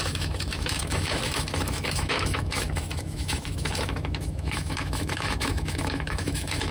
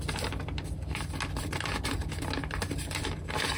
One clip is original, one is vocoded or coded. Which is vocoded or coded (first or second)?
first